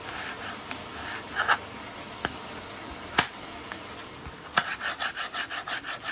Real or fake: real